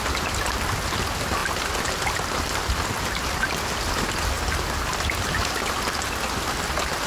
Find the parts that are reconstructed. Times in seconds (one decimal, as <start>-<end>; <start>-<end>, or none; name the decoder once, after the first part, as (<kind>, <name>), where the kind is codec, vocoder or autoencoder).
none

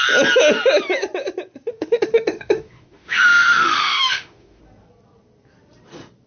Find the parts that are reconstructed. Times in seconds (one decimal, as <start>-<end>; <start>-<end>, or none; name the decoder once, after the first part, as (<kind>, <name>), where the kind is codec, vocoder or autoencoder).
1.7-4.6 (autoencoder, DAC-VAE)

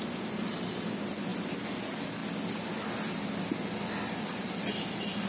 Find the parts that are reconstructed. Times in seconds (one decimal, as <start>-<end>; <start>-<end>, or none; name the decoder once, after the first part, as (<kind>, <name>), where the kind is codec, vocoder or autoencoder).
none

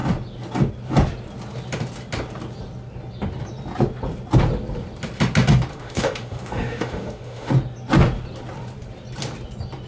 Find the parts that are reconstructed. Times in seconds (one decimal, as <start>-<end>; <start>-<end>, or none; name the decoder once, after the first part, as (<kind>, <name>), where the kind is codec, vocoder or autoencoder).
5.7-7.5 (autoencoder, DAC-VAE)

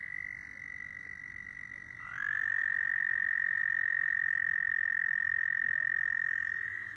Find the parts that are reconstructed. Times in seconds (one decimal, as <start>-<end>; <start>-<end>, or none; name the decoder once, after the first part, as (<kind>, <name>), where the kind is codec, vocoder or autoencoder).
0.6-7.0 (autoencoder, DAC-VAE)

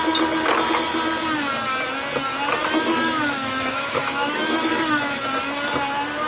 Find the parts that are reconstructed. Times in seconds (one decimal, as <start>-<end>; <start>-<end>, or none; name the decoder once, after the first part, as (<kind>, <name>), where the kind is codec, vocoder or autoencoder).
2.6-5.2 (autoencoder, DAC-VAE)